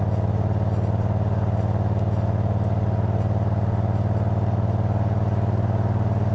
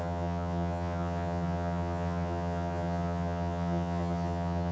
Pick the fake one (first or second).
second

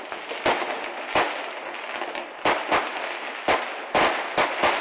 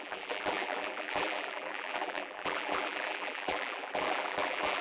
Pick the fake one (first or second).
second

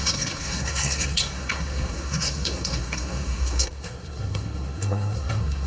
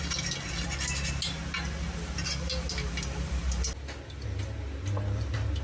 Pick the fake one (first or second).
first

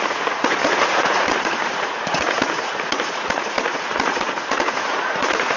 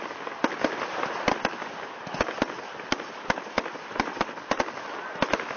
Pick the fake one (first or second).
first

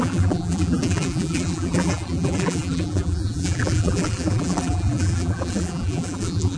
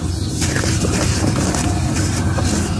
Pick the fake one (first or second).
first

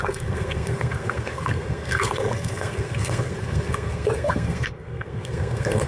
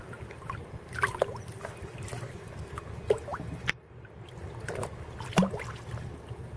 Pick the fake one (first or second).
first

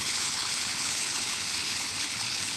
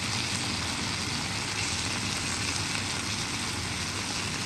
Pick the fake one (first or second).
first